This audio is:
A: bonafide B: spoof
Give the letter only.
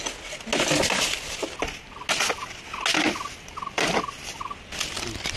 A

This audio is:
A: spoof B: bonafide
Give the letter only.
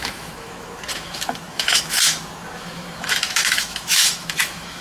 A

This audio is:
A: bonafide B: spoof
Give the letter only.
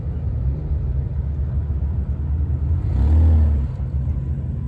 A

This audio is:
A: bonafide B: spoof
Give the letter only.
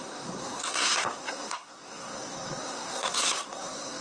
B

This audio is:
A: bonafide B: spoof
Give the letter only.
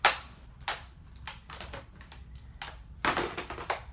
A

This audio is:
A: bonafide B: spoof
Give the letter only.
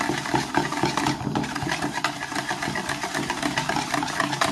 A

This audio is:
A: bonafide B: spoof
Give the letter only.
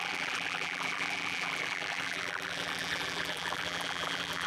B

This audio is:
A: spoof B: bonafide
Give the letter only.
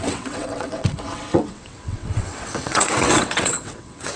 A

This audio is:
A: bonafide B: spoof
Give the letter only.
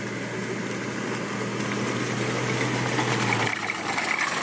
A